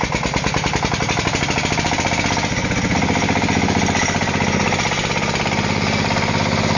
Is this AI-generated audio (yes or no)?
no